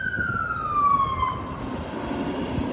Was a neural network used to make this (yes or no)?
no